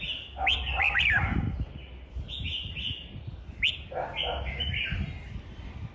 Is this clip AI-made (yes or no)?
no